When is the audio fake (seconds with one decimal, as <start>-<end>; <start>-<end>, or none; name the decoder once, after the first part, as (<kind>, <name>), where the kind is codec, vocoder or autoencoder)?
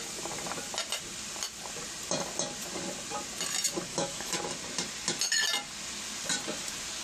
3.9-4.4 (autoencoder, DAC-VAE)